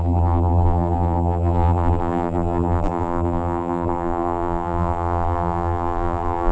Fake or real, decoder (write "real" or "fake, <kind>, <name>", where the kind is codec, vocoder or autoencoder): fake, vocoder, BigVGAN v2